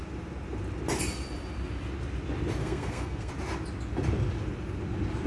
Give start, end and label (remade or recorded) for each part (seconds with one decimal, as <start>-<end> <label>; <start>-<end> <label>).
0.0-2.6 recorded; 2.6-3.3 remade; 3.3-5.3 recorded